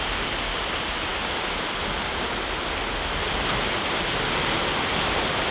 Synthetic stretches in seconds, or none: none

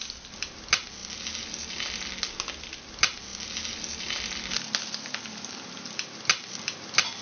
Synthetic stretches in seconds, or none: none

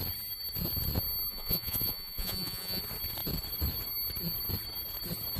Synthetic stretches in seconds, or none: 1.3-2.8 (vocoder, Vocos)